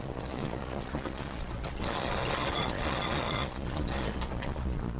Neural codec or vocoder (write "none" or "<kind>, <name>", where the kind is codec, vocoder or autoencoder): vocoder, Vocos